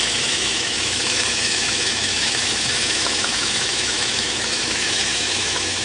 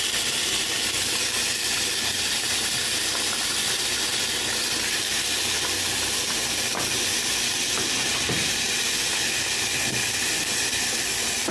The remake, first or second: first